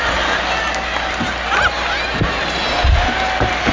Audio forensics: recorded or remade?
recorded